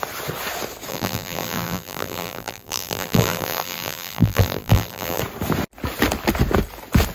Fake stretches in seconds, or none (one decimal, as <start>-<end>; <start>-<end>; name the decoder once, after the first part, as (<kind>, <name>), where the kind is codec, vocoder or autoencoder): 0.9-5.2 (vocoder, BigVGAN v2)